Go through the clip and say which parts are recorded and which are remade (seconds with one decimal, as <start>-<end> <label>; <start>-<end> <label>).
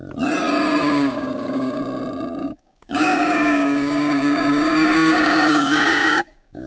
0.0-0.8 recorded; 0.8-1.8 remade; 1.8-2.4 recorded; 2.4-6.7 remade